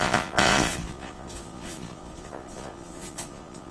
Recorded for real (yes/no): no